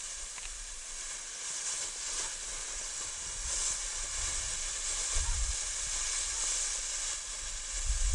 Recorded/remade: recorded